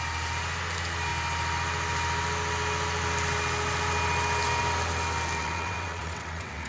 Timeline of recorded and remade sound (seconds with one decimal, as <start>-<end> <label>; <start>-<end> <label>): 0.0-5.4 recorded; 5.4-6.7 remade